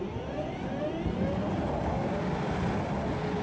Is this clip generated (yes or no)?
no